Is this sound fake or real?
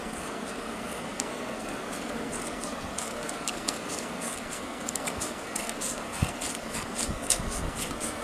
fake